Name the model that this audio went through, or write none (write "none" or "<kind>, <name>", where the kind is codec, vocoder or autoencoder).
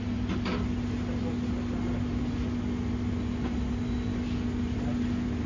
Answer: none